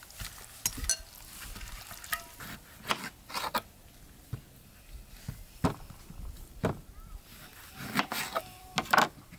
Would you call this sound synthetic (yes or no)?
no